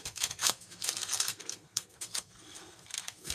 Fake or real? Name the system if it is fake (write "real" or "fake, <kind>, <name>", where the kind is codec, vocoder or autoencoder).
fake, codec, SNAC